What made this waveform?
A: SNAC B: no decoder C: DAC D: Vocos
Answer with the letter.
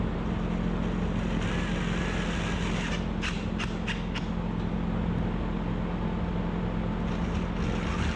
B